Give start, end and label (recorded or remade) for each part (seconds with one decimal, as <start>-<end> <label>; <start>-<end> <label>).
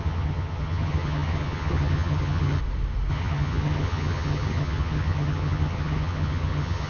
0.0-2.6 remade; 2.6-3.1 recorded; 3.1-6.9 remade